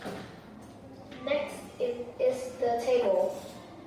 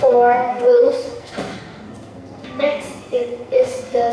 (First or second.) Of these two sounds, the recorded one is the first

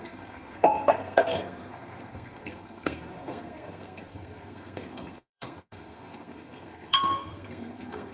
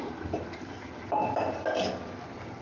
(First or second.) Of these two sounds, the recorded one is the second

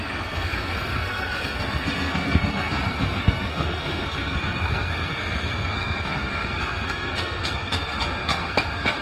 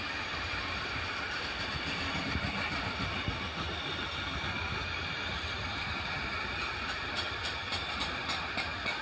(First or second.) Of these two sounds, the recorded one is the second